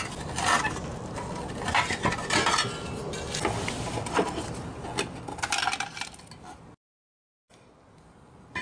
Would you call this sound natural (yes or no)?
yes